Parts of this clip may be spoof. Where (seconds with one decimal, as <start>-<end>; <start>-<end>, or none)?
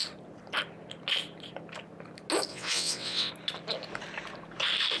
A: 2.5-3.3